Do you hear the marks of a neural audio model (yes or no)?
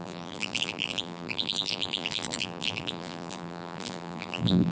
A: yes